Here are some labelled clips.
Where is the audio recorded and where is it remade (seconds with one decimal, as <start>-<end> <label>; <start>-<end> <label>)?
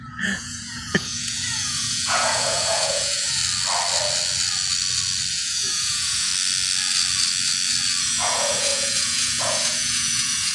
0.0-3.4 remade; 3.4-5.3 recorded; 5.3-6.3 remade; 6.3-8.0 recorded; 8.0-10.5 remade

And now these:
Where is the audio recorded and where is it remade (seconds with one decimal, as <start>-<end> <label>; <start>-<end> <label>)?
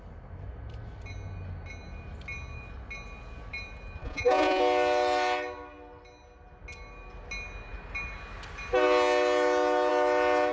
0.0-4.0 recorded; 4.0-4.6 remade; 4.6-10.5 recorded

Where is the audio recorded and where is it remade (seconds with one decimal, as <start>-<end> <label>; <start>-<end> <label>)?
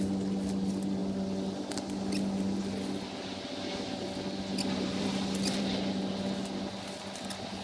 0.0-7.6 recorded